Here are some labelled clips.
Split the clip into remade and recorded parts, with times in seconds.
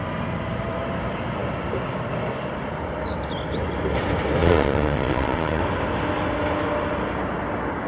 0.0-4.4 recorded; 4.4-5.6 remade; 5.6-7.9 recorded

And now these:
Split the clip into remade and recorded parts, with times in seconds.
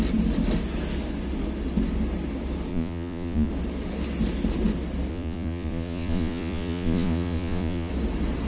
0.0-2.7 recorded; 2.7-3.5 remade; 3.5-5.1 recorded; 5.1-7.9 remade; 7.9-8.5 recorded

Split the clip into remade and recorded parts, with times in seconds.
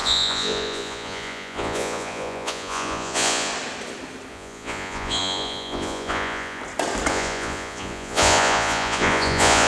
0.0-3.5 remade; 3.5-4.3 recorded; 4.3-6.6 remade; 6.6-7.1 recorded; 7.1-9.7 remade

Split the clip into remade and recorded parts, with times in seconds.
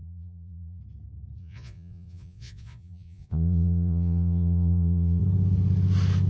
0.0-0.8 remade; 0.8-1.4 recorded; 1.4-5.2 remade; 5.2-6.3 recorded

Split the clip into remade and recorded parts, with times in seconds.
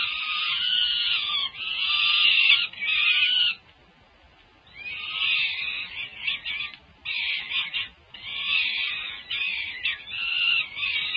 0.0-0.4 recorded; 0.4-1.9 remade; 1.9-11.2 recorded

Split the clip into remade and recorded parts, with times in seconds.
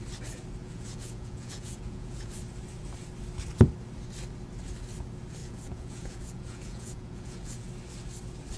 0.0-0.6 recorded; 0.6-2.3 remade; 2.3-5.4 recorded; 5.4-7.7 remade; 7.7-8.6 recorded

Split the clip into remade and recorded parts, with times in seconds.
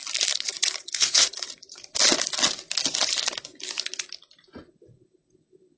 0.0-0.5 recorded; 0.5-1.9 remade; 1.9-5.8 recorded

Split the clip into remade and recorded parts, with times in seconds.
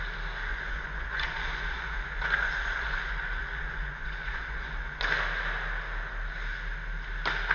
0.0-0.5 recorded; 0.5-5.0 remade; 5.0-7.5 recorded